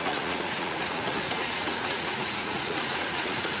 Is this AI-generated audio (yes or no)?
yes